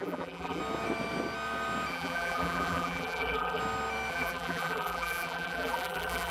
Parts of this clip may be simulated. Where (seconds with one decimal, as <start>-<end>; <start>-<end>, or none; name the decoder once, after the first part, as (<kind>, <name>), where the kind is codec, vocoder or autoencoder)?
0.0-0.6 (vocoder, BigVGAN v2); 1.9-3.6; 4.1-6.3